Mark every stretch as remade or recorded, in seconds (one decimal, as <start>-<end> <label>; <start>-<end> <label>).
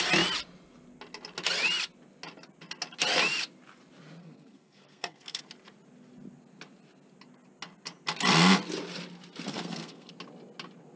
0.0-4.2 recorded; 4.2-5.4 remade; 5.4-9.5 recorded; 9.5-10.1 remade; 10.1-11.0 recorded